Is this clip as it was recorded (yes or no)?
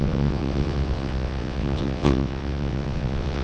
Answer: no